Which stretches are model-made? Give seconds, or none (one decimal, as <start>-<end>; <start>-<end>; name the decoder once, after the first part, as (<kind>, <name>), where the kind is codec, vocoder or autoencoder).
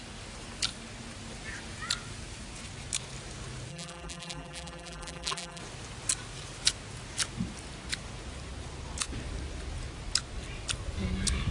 3.7-5.6 (vocoder, BigVGAN v2)